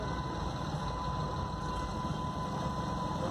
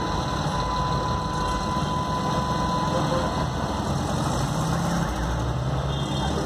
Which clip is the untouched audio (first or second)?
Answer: second